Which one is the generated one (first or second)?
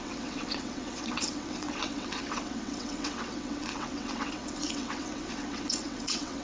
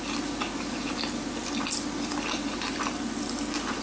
first